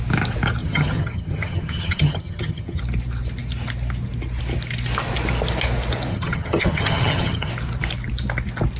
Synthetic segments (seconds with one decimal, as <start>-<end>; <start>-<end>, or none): 0.6-2.8; 6.1-7.5